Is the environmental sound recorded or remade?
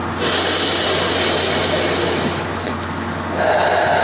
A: recorded